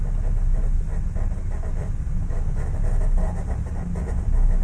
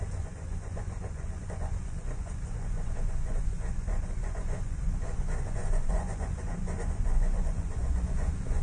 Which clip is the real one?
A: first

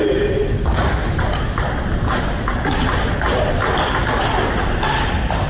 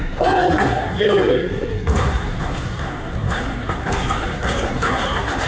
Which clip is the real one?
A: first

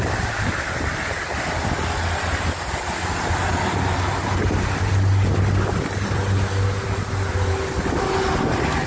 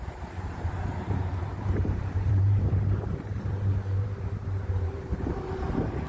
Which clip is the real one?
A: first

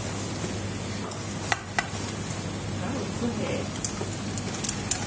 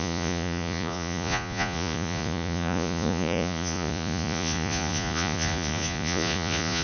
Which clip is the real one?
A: first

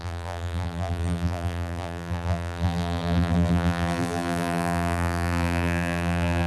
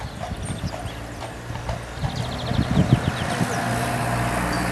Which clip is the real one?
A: second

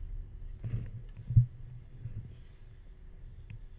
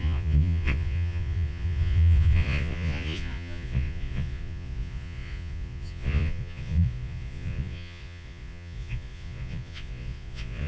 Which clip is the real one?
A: first